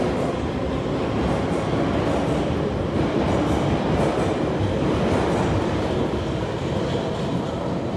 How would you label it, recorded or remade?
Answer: recorded